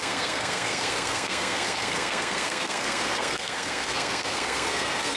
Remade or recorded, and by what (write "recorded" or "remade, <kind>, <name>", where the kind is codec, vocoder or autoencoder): remade, codec, SNAC